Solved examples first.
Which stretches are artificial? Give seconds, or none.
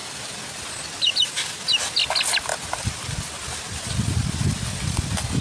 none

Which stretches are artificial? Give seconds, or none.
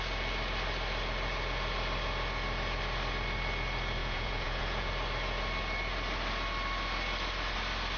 4.0-4.9 (vocoder, Vocos)